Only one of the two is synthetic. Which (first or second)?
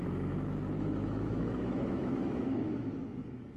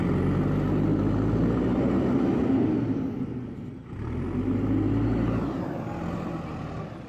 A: first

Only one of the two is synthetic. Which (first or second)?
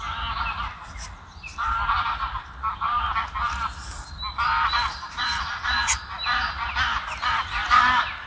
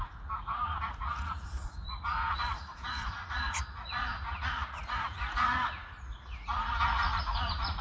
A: second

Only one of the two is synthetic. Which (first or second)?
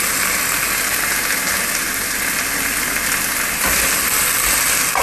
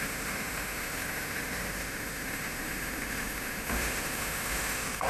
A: second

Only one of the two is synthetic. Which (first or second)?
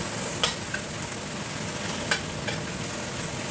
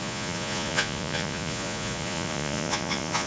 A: second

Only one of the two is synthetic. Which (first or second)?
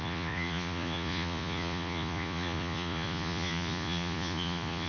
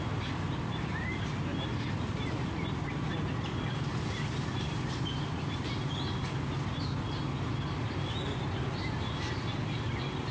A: first